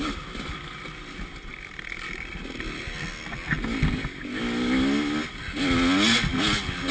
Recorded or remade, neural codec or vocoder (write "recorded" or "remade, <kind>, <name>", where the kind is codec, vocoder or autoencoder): recorded